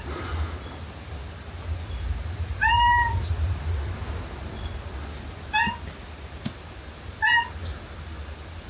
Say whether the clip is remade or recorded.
recorded